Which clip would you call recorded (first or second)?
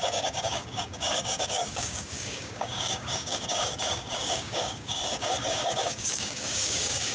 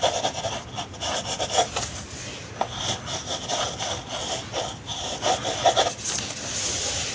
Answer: second